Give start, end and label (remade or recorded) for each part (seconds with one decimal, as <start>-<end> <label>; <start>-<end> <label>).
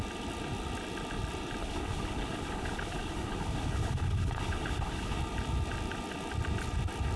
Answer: 0.0-1.6 recorded; 1.6-5.2 remade; 5.2-7.2 recorded